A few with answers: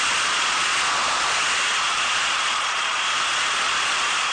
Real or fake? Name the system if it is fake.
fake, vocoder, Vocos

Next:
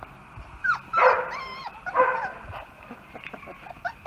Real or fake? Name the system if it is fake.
real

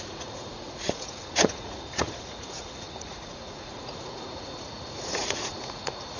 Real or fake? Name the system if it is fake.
fake, vocoder, Vocos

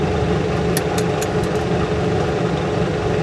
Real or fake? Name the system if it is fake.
real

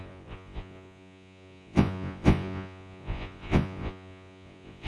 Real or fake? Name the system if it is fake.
fake, vocoder, Vocos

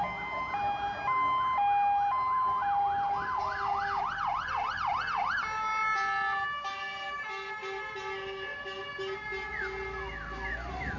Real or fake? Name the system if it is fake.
real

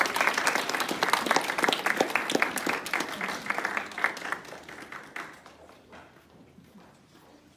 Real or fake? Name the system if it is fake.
real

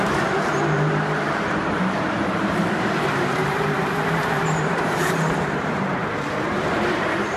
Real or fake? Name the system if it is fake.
fake, vocoder, BigVGAN v2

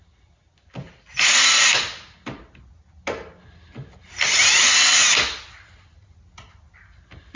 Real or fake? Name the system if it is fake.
real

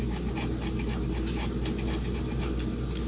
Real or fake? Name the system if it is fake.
real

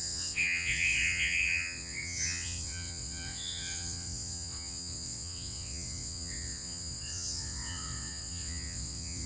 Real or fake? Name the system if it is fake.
fake, vocoder, WaveNeXt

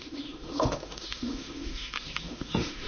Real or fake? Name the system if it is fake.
fake, autoencoder, DAC-VAE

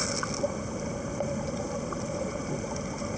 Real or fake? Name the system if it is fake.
real